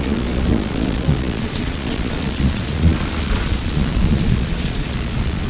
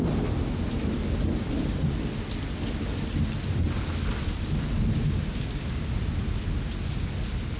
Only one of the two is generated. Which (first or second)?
first